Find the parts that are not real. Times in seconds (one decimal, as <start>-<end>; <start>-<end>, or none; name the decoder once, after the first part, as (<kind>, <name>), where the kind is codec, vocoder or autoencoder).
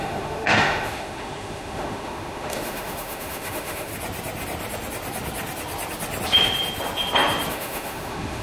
0.0-3.9 (autoencoder, DAC-VAE); 7.5-8.4